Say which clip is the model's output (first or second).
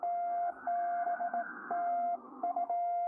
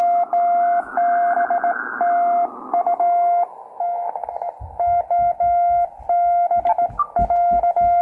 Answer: first